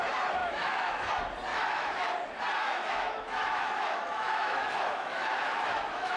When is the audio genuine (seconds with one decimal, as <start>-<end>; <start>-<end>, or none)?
0.0-0.4; 1.1-1.5; 2.1-2.6